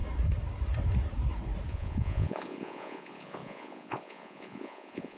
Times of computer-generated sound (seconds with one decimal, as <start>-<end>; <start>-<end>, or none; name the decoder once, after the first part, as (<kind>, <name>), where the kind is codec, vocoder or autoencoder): 1.7-5.2 (vocoder, Vocos)